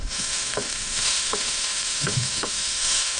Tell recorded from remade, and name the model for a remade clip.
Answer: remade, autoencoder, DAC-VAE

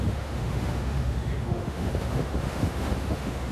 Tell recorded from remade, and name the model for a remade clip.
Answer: remade, autoencoder, DAC-VAE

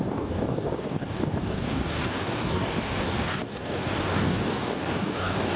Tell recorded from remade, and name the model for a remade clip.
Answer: remade, codec, DAC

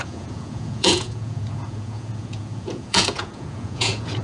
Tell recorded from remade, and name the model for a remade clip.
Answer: remade, vocoder, Vocos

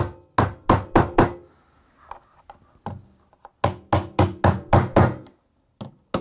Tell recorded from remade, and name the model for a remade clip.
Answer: recorded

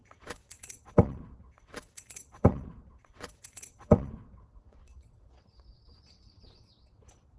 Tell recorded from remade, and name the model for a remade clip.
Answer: remade, vocoder, WaveNeXt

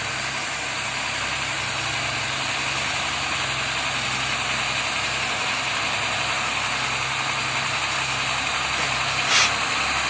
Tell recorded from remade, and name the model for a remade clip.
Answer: recorded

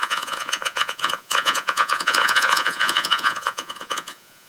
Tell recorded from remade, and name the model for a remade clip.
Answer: remade, vocoder, Vocos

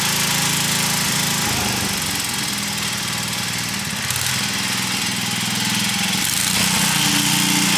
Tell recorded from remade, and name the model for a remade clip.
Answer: recorded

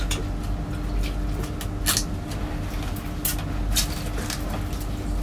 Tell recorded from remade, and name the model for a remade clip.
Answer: recorded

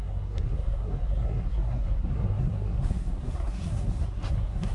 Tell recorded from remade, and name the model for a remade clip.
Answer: remade, codec, SNAC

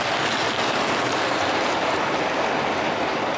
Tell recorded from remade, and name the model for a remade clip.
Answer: recorded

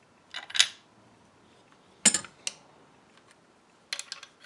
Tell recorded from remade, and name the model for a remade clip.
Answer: recorded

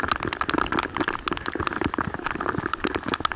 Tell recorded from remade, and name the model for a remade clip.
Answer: recorded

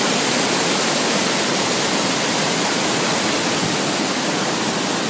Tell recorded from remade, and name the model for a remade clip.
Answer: recorded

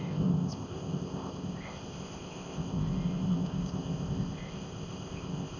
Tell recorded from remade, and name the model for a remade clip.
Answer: remade, codec, ZipCodec